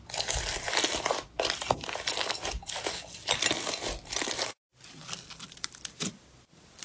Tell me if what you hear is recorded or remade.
recorded